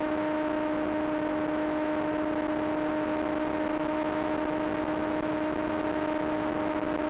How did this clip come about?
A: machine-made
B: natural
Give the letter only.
B